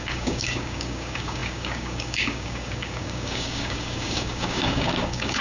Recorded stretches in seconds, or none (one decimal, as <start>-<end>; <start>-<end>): none